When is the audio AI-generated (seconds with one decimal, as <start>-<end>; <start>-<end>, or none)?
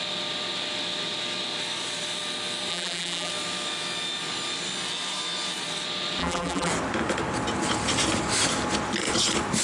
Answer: 2.7-3.3; 6.2-6.7